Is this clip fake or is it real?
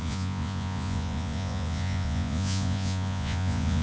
fake